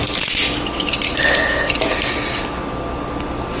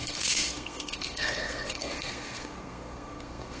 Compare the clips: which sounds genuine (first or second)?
first